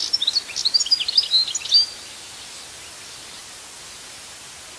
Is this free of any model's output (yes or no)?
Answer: yes